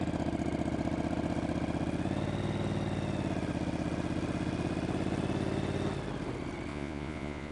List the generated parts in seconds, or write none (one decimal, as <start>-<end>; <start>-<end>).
6.7-7.5